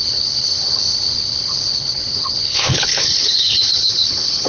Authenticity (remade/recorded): remade